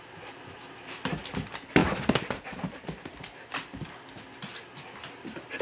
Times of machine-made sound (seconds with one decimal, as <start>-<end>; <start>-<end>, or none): none